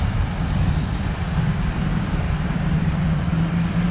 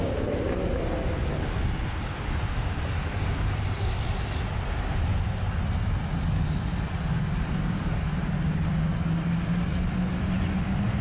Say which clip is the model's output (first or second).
first